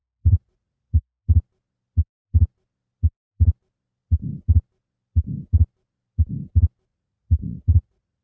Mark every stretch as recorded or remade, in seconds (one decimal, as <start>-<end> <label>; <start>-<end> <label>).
0.0-1.2 remade; 1.2-6.9 recorded; 6.9-8.2 remade